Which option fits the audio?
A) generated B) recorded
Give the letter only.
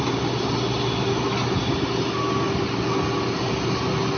B